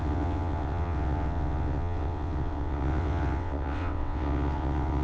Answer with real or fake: fake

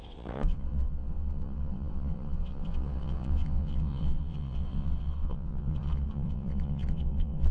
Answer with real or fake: fake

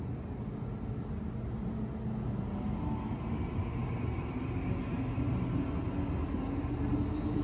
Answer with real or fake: real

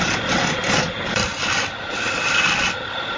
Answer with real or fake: real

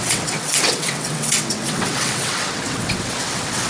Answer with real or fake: fake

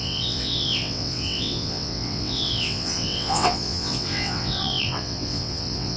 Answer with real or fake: fake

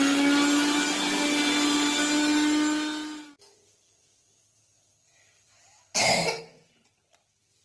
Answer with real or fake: real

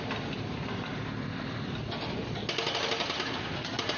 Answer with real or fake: real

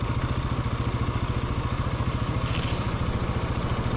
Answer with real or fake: real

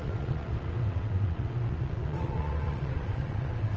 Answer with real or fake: fake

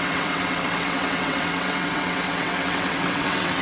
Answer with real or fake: fake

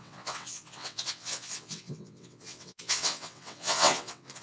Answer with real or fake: fake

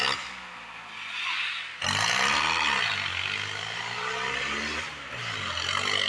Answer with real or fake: real